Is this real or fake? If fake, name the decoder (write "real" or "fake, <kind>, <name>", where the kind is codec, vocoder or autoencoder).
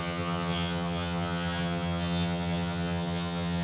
fake, vocoder, HiFi-GAN